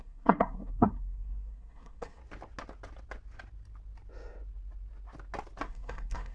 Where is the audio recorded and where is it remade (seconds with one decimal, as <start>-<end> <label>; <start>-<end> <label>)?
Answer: 0.0-2.2 remade; 2.2-5.6 recorded; 5.6-6.3 remade